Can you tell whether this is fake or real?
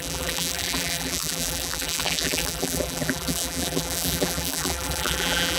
fake